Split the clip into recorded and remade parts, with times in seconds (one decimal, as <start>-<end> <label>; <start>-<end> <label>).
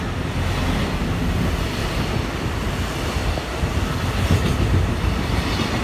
0.0-5.8 recorded